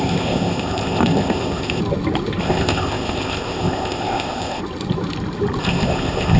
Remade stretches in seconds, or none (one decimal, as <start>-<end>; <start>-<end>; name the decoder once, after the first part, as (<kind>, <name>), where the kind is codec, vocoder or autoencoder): 0.0-1.8 (codec, ZipCodec); 2.4-4.6; 5.6-6.4